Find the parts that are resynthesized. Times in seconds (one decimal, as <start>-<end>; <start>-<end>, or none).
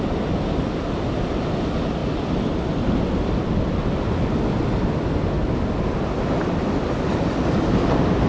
none